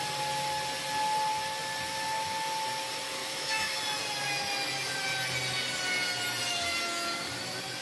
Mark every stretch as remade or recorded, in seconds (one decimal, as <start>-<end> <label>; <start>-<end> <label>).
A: 0.0-3.2 recorded; 3.2-3.8 remade; 3.8-7.8 recorded

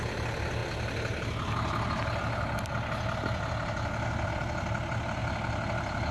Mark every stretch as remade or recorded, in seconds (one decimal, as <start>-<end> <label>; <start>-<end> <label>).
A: 0.0-6.1 recorded